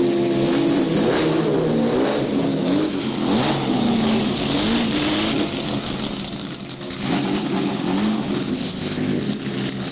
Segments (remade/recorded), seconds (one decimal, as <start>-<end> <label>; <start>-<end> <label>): 0.0-8.5 recorded; 8.5-9.2 remade; 9.2-9.9 recorded